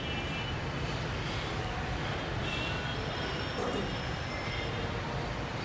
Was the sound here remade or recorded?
recorded